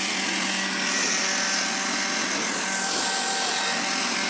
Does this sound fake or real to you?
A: real